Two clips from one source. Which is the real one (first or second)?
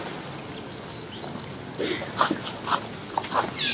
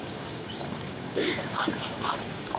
first